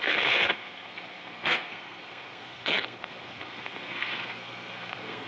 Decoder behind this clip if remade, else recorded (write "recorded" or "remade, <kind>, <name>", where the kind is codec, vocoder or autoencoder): remade, codec, SNAC